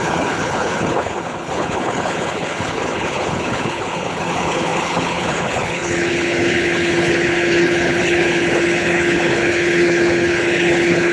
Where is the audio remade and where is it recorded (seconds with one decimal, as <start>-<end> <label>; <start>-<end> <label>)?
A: 0.0-11.1 remade